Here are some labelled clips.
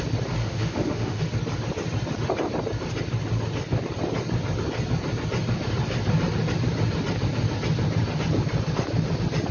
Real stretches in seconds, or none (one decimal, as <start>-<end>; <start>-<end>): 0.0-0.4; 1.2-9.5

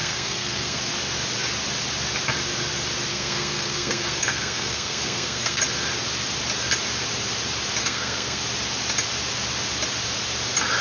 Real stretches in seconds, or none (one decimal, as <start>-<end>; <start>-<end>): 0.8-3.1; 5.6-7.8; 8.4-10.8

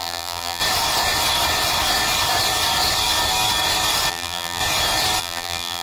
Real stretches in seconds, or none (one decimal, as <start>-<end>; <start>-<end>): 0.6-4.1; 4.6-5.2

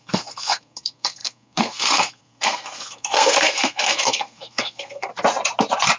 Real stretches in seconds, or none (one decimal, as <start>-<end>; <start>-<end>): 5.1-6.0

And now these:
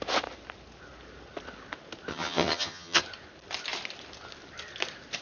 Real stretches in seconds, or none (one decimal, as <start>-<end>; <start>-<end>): 0.0-2.1; 3.0-5.2

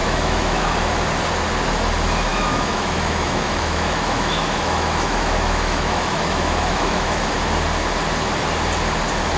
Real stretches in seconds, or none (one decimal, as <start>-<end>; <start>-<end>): 0.7-2.3; 7.3-9.4

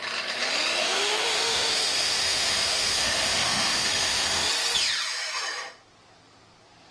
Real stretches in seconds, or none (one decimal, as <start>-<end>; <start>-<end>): 0.0-0.8; 4.3-6.9

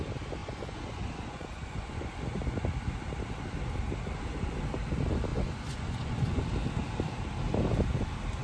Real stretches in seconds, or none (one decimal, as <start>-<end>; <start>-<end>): 0.0-0.4; 2.1-5.3; 6.4-8.4